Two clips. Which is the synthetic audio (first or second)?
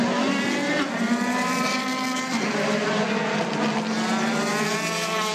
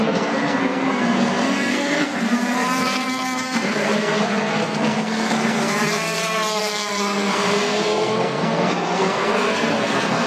second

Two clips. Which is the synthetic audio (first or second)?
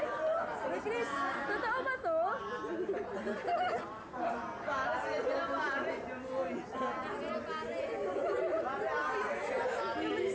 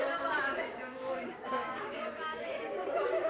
second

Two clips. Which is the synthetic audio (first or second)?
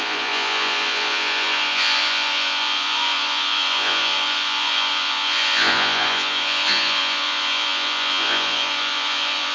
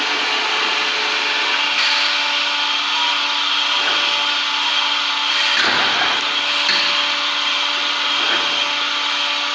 first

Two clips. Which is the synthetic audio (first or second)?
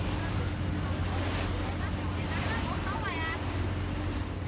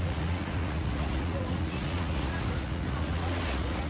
second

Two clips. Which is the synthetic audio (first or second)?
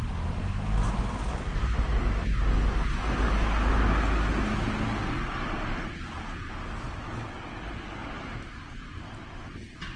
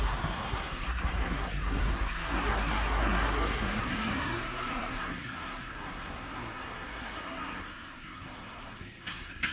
second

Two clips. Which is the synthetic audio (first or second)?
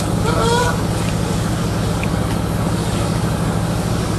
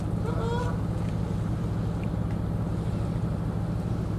first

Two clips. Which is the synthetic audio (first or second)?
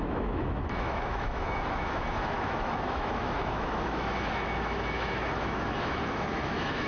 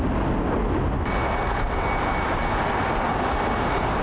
first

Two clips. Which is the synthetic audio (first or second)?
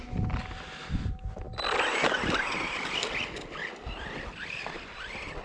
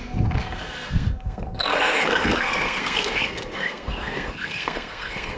second